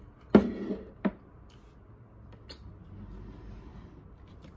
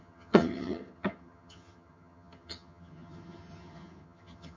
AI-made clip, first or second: second